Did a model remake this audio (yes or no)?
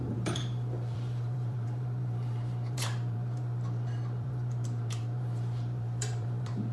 yes